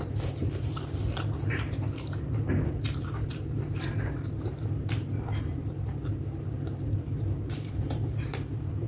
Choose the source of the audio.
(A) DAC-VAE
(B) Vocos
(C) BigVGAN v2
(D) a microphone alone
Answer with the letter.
C